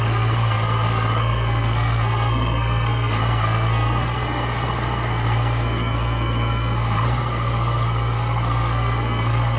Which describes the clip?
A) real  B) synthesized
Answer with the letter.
B